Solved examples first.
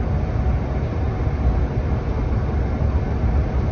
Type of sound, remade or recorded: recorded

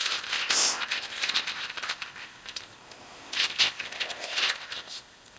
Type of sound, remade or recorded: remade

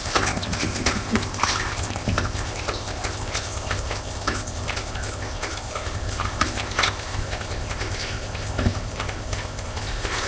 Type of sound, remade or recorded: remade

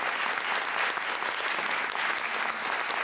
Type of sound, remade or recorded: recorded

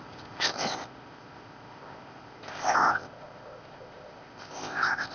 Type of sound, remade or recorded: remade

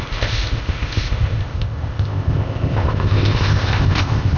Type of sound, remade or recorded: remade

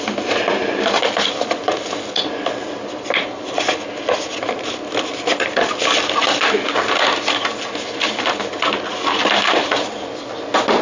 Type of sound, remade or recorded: recorded